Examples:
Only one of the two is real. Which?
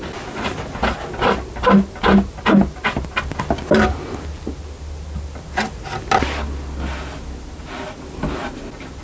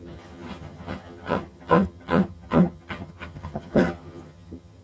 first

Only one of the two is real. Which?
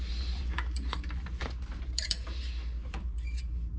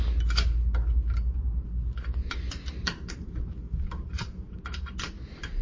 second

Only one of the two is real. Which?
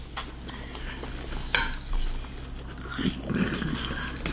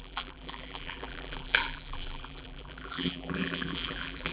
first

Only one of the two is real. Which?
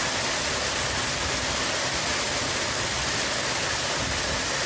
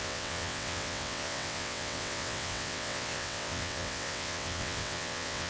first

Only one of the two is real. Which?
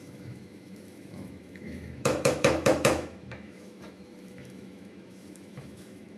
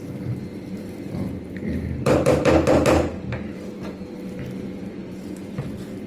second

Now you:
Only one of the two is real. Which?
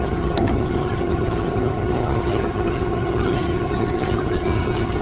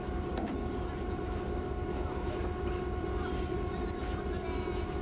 second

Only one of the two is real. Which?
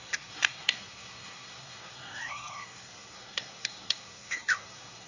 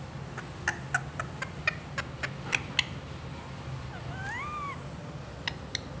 second